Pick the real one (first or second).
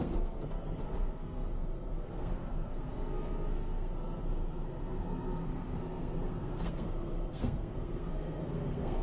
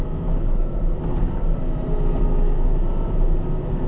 second